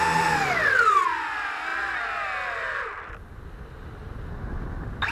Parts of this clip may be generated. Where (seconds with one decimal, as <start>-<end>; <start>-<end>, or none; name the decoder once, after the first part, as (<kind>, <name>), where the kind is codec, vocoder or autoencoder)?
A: none

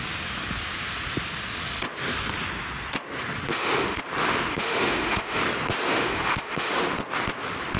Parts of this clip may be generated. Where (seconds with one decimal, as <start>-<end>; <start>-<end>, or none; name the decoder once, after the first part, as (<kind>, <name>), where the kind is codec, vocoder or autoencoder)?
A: 3.5-4.0 (autoencoder, DAC-VAE); 4.5-5.4; 5.9-6.7

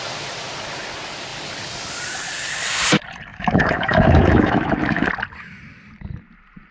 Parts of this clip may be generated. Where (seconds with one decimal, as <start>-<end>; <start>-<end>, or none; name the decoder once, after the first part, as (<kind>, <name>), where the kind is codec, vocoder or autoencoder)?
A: 3.3-5.1 (autoencoder, DAC-VAE)

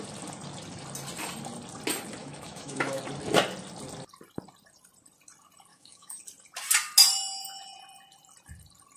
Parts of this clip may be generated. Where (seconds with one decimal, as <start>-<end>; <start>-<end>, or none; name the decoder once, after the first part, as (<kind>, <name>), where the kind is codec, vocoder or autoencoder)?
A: 2.2-3.0 (autoencoder, DAC-VAE); 5.7-6.2

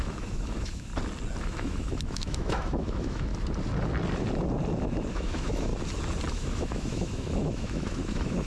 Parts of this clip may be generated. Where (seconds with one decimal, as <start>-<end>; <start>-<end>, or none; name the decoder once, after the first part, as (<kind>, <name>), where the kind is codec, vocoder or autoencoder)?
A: 0.0-0.9 (autoencoder, DAC-VAE); 1.4-3.3; 5.1-5.7; 6.3-8.5

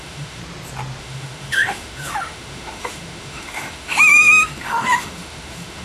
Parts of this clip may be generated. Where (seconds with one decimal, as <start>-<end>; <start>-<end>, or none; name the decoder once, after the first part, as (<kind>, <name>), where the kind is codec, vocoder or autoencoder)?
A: 0.0-0.4 (autoencoder, DAC-VAE); 1.0-5.8

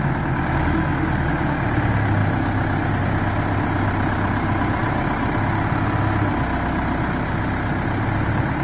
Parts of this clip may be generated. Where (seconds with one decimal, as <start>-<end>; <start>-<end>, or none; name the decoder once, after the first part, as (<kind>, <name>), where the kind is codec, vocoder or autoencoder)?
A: 0.6-1.3 (autoencoder, DAC-VAE)

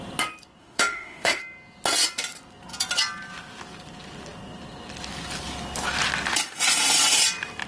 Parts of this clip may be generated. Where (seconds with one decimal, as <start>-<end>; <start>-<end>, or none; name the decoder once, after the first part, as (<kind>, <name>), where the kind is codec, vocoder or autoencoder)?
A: 0.6-1.4 (autoencoder, DAC-VAE)